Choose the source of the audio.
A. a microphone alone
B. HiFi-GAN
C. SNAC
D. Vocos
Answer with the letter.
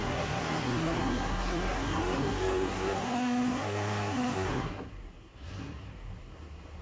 C